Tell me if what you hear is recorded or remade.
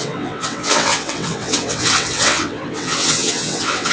remade